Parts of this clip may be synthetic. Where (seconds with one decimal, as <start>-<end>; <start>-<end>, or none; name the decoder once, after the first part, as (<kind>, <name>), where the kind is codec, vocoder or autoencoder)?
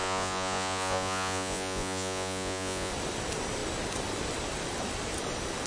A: 0.0-2.9 (vocoder, Vocos)